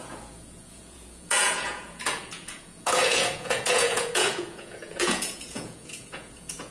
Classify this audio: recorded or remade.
remade